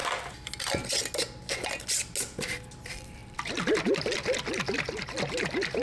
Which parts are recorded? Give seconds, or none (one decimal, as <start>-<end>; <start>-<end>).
0.0-3.2; 4.8-5.8